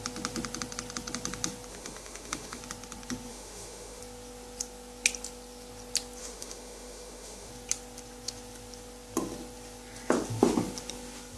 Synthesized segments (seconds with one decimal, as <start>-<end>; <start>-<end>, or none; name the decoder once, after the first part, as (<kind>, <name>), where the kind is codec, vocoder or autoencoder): 1.7-2.6 (autoencoder, DAC-VAE); 3.3-4.0; 6.2-7.5